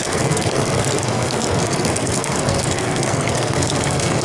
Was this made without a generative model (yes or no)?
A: no